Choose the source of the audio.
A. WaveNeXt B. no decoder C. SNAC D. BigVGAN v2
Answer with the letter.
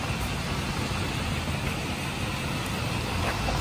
B